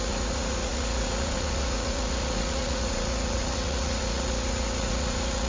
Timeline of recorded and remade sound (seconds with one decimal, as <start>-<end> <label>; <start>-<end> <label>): 0.0-5.5 remade